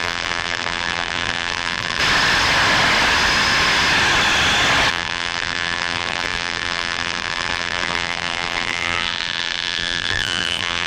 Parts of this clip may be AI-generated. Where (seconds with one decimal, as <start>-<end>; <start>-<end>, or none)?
0.0-2.0; 4.9-10.9